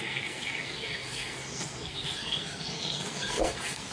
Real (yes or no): no